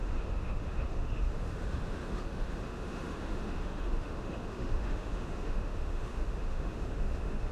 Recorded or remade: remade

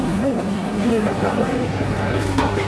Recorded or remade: remade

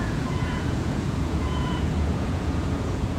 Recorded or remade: remade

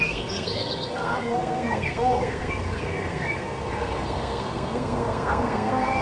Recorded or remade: remade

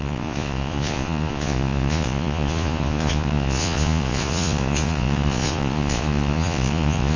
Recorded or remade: remade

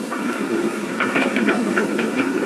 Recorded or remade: remade